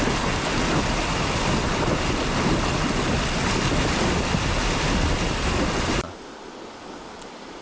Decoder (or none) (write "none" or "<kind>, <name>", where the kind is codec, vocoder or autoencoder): none